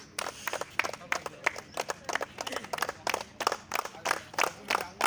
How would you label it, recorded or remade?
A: recorded